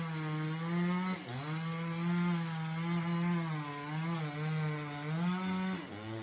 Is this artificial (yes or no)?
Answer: no